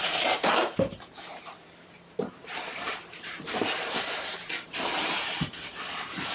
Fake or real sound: fake